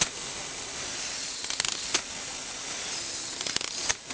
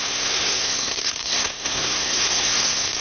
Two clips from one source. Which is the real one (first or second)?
first